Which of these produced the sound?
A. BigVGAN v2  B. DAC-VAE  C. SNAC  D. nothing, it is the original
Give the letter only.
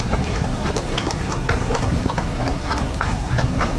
C